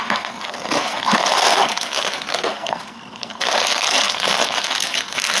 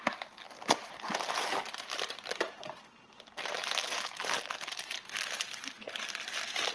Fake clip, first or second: first